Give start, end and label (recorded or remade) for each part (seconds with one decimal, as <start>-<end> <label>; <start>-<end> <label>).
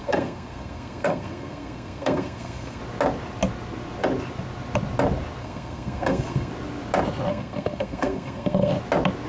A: 0.0-2.8 remade; 2.8-5.4 recorded; 5.4-6.5 remade; 6.5-7.3 recorded; 7.3-8.7 remade; 8.7-9.3 recorded